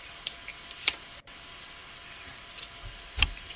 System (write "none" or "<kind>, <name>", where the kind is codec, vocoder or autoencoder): vocoder, BigVGAN v2